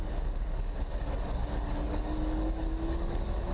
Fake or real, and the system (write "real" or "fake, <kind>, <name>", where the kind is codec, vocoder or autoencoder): fake, codec, DAC